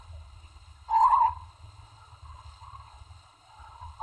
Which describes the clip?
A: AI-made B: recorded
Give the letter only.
A